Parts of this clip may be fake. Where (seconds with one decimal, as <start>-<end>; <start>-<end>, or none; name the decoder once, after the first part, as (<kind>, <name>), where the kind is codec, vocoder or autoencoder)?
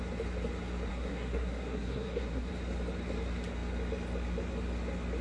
0.9-2.5 (codec, SNAC)